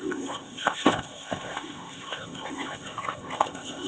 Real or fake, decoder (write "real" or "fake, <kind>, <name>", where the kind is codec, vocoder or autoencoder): fake, codec, ZipCodec